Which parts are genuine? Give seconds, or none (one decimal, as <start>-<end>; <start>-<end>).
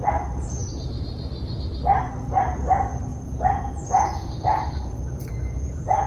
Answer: 0.0-3.1